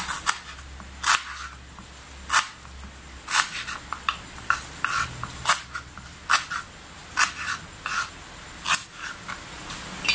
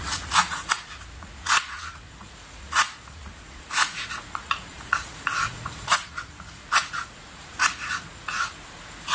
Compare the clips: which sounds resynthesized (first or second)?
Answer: second